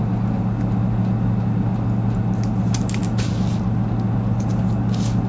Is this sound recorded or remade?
recorded